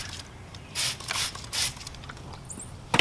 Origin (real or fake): real